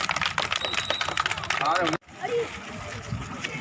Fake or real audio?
real